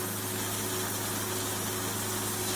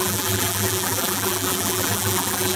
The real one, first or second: first